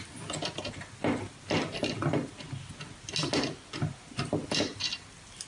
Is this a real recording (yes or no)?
yes